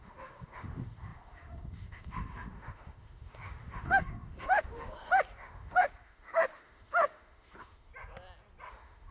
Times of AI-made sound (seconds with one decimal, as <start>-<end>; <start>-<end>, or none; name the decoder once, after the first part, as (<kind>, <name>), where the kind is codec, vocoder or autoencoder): 0.0-7.9 (autoencoder, DAC-VAE); 8.7-9.1